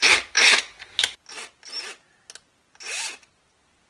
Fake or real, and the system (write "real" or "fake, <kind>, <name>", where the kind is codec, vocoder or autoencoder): real